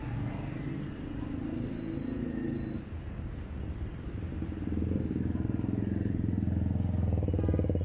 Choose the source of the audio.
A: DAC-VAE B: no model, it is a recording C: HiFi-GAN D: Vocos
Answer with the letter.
B